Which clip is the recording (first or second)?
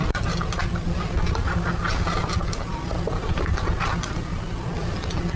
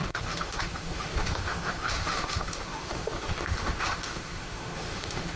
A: first